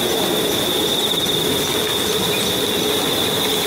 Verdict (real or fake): real